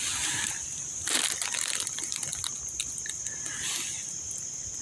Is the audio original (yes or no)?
yes